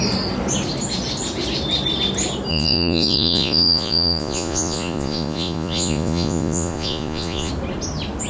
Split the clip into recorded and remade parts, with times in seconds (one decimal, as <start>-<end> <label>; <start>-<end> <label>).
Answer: 0.0-2.5 recorded; 2.5-7.5 remade; 7.5-8.3 recorded